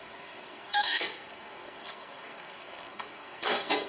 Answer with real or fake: fake